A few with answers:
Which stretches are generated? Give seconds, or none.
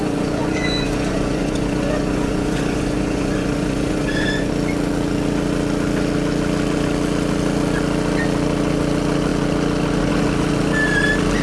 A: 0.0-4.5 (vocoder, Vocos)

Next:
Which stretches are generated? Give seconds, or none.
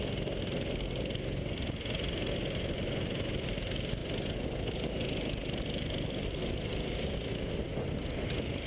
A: none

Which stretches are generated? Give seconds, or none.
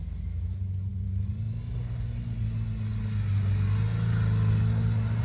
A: none